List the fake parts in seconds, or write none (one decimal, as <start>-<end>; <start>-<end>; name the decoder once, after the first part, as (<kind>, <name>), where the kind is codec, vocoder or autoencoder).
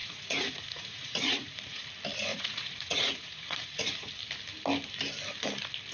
0.0-1.8 (vocoder, Vocos); 2.3-4.1